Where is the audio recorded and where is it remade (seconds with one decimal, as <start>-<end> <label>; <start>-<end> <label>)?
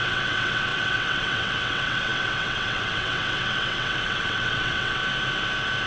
0.0-5.0 remade; 5.0-5.9 recorded